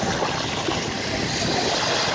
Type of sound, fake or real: real